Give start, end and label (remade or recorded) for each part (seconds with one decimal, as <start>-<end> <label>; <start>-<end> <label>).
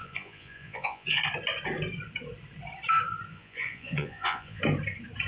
0.0-1.2 remade; 1.2-3.3 recorded; 3.3-4.6 remade; 4.6-5.3 recorded